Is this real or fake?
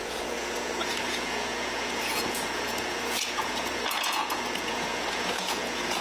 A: fake